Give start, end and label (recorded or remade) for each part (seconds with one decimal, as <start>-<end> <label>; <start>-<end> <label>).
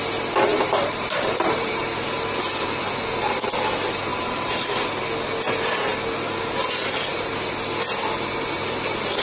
0.0-0.5 recorded; 0.5-1.8 remade; 1.8-4.1 recorded; 4.1-4.7 remade; 4.7-9.2 recorded